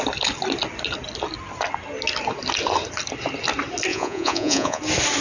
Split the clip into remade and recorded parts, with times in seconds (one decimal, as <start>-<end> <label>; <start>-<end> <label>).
0.0-3.9 recorded; 3.9-4.8 remade; 4.8-5.2 recorded